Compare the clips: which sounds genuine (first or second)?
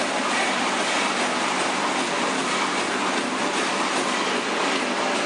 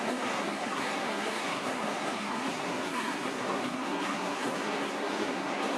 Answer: first